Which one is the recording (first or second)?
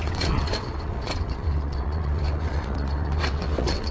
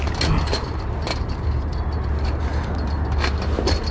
second